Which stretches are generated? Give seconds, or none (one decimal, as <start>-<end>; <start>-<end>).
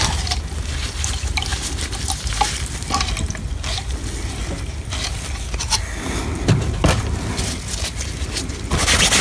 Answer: none